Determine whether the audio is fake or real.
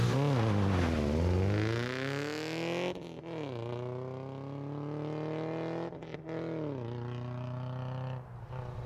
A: real